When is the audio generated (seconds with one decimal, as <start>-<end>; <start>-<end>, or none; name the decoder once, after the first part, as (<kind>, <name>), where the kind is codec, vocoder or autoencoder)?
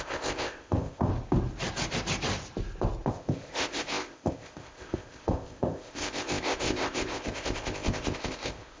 0.0-1.1 (codec, ZipCodec); 3.1-8.8